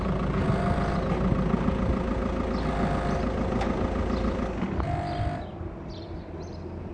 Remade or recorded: recorded